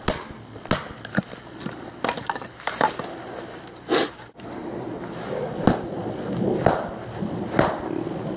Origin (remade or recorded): recorded